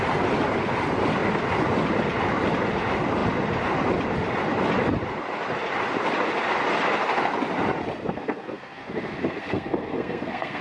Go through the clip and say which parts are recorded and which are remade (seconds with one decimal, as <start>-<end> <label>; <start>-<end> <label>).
0.0-8.1 recorded; 8.1-10.6 remade